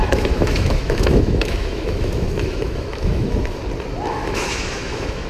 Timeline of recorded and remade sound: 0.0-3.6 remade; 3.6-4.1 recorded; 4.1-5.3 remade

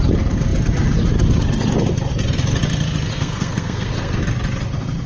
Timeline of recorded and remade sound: 0.0-3.1 recorded; 3.1-4.2 remade; 4.2-5.1 recorded

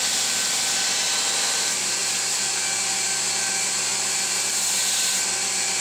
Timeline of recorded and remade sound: 0.0-2.0 recorded; 2.0-2.6 remade; 2.6-5.8 recorded

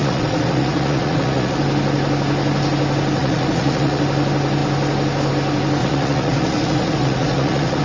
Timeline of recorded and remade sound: 0.0-1.6 remade; 1.6-3.2 recorded; 3.2-4.0 remade; 4.0-5.8 recorded; 5.8-7.8 remade

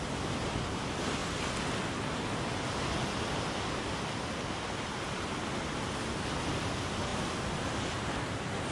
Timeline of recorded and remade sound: 0.0-7.1 recorded; 7.1-7.8 remade; 7.8-8.7 recorded

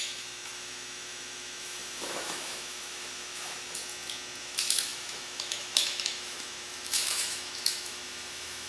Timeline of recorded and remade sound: 0.0-3.8 remade; 3.8-4.4 recorded; 4.4-8.7 remade

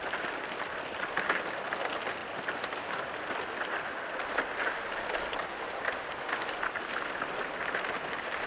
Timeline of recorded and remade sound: 0.0-8.5 recorded

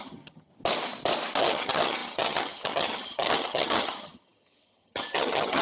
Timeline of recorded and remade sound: 0.0-0.5 remade; 0.5-1.4 recorded; 1.4-5.6 remade